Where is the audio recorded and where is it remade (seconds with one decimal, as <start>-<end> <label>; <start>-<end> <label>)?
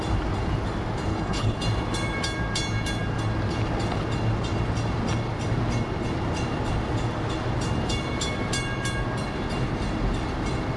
0.0-1.1 recorded; 1.1-1.6 remade; 1.6-10.8 recorded